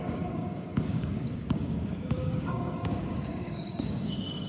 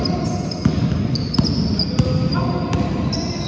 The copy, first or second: first